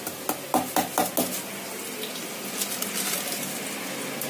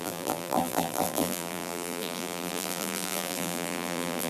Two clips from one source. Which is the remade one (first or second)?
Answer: second